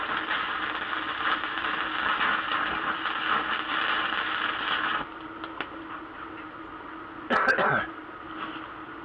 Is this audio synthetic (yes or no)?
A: no